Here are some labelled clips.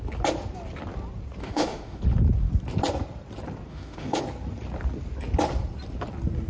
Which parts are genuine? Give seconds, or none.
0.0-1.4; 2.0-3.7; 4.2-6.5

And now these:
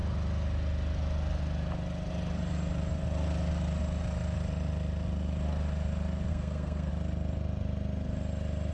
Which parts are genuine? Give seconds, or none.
0.0-6.3; 6.9-8.7

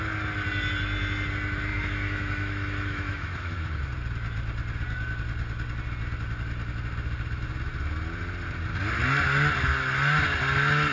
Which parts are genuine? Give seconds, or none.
0.0-1.7; 3.8-10.9

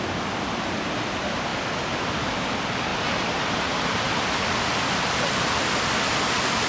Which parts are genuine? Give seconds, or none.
0.0-2.9; 4.3-6.7

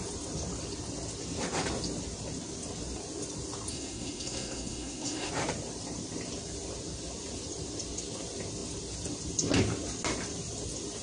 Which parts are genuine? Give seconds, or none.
0.0-3.7; 5.3-11.0

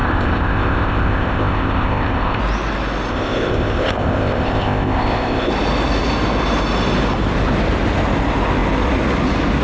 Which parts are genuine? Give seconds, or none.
2.4-3.1; 5.5-9.6

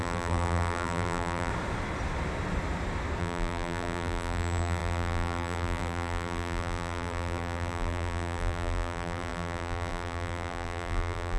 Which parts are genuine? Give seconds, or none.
1.5-3.2